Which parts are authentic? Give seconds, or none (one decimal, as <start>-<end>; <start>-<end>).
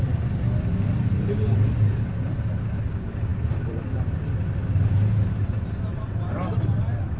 0.0-7.2